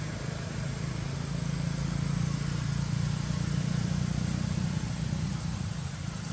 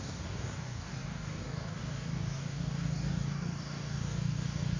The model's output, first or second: second